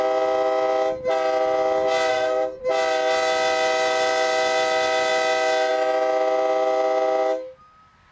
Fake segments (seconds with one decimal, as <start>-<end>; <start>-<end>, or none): 2.1-2.6